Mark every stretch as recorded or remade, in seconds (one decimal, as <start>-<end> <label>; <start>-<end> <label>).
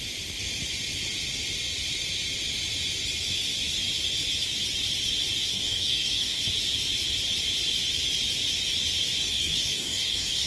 0.0-5.5 recorded; 5.5-6.4 remade; 6.4-9.2 recorded; 9.2-10.5 remade